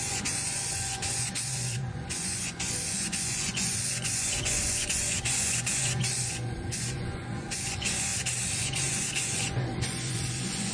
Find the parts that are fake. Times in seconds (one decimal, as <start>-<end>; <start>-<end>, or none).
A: 0.0-8.1; 8.6-10.7